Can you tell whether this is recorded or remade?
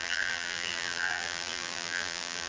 remade